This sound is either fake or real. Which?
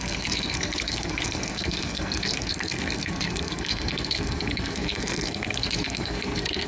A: fake